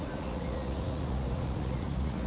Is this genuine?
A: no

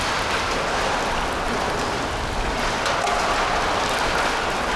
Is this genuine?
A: yes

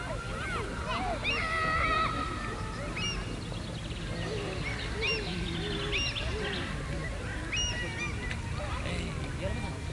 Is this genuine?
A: yes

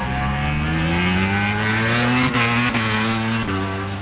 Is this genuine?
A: yes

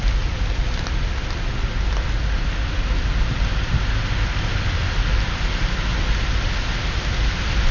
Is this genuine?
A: yes